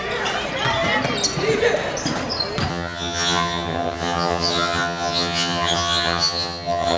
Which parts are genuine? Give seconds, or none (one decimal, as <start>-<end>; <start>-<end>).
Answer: 0.0-2.7